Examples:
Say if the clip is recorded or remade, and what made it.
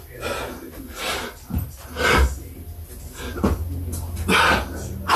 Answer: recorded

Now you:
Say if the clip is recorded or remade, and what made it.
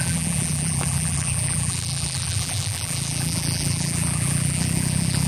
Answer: remade, vocoder, BigVGAN v2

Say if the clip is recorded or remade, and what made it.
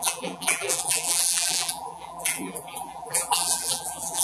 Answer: remade, vocoder, BigVGAN v2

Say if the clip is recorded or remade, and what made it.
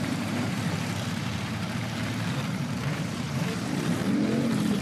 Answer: remade, vocoder, BigVGAN v2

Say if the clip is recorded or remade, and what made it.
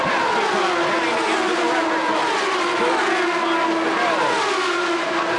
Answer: recorded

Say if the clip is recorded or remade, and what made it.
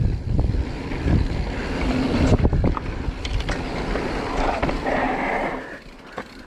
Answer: remade, vocoder, BigVGAN v2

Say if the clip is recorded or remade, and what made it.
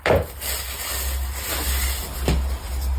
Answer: recorded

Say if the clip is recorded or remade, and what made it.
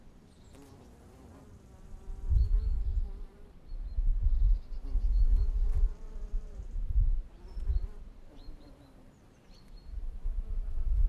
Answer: remade, vocoder, BigVGAN v2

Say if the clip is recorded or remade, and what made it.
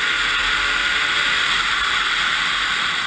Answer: recorded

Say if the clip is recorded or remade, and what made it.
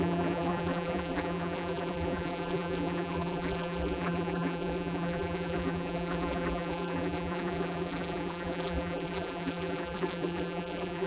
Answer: remade, vocoder, BigVGAN v2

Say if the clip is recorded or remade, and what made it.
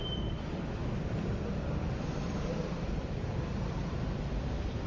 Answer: remade, vocoder, BigVGAN v2